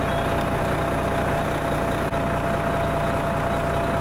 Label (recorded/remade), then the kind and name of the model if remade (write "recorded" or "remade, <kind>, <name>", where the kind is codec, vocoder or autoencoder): recorded